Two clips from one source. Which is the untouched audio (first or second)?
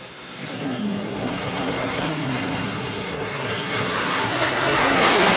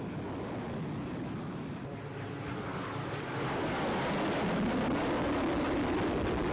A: second